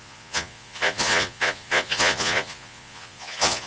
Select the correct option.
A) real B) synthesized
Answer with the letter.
B